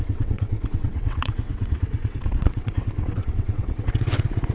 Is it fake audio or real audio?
fake